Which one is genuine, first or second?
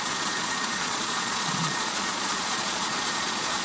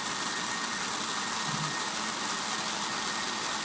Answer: second